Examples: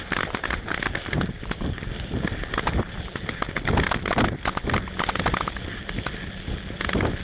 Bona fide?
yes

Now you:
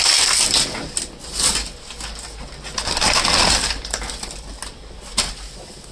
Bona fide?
yes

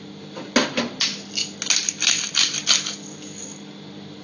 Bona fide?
yes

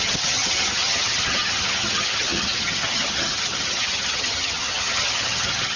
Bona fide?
no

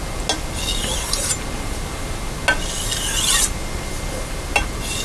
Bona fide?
yes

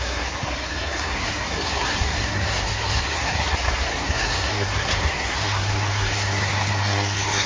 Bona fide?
no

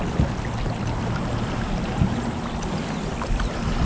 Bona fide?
yes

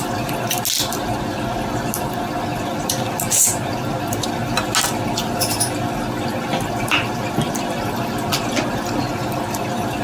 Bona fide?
yes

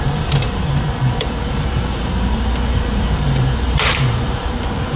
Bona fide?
no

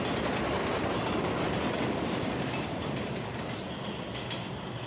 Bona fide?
yes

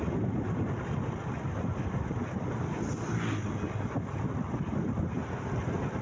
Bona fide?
yes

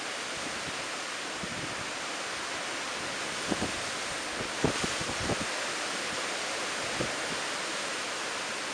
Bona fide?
yes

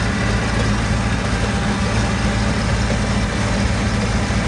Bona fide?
yes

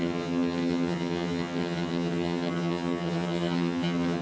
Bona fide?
no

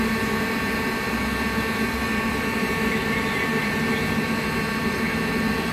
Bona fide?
yes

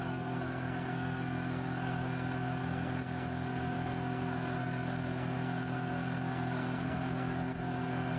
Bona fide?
no